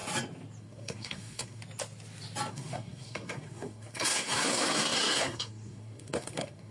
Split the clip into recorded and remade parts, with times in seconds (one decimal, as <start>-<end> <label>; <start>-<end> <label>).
0.0-0.6 recorded; 0.6-1.6 remade; 1.6-2.5 recorded; 2.5-6.7 remade